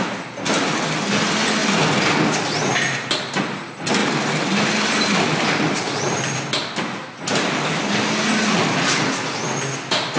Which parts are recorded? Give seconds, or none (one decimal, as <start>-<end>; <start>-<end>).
0.0-4.0; 6.8-10.2